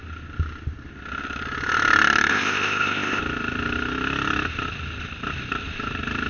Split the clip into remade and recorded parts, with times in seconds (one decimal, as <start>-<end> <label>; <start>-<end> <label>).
0.0-2.3 recorded; 2.3-3.2 remade; 3.2-6.3 recorded